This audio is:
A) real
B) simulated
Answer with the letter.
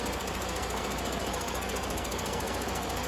B